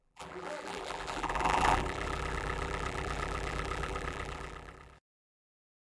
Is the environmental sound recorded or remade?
remade